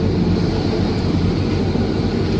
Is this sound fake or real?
real